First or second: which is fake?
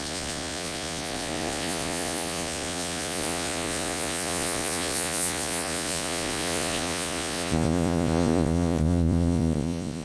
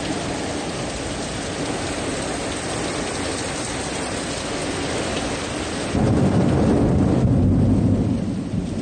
first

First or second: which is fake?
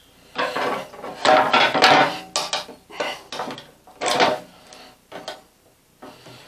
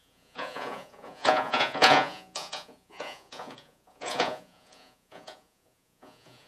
second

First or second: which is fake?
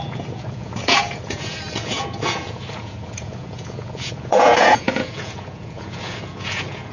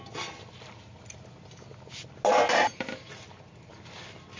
first